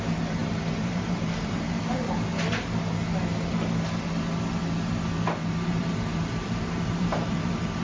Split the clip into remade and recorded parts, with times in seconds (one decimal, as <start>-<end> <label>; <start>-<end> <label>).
0.0-2.3 remade; 2.3-5.4 recorded; 5.4-7.8 remade